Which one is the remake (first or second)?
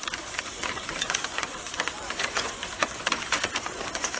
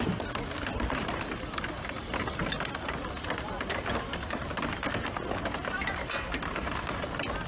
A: first